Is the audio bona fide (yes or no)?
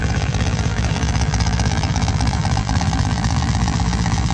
no